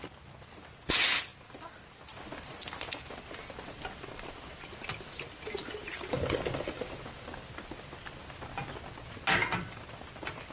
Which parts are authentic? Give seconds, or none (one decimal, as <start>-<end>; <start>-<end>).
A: 0.0-1.3; 6.2-9.4; 10.1-10.5